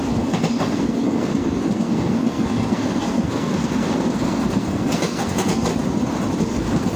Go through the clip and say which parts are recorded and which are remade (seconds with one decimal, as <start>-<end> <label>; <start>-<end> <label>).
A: 0.0-5.7 remade; 5.7-6.4 recorded; 6.4-7.0 remade